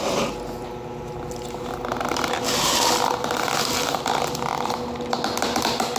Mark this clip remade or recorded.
recorded